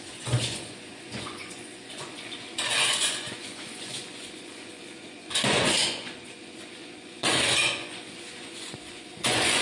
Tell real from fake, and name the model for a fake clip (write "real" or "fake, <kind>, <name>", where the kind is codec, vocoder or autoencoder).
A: fake, vocoder, Vocos